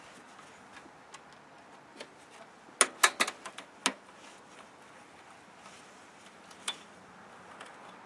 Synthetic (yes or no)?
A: no